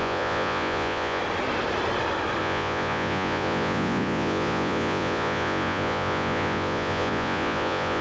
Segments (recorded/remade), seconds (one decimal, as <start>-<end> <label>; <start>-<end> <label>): 0.0-1.2 remade; 1.2-2.4 recorded; 2.4-8.0 remade